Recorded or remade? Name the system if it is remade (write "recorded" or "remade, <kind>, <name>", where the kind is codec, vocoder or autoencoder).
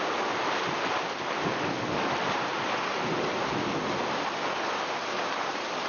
recorded